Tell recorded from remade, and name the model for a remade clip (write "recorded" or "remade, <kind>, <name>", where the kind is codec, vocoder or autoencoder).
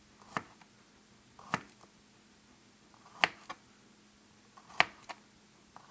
recorded